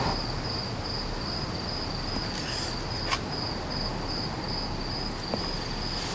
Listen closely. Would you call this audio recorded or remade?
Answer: recorded